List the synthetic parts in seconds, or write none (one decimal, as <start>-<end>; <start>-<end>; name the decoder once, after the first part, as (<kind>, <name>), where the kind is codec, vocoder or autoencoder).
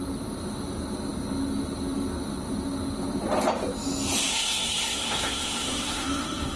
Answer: 4.3-6.6 (codec, SNAC)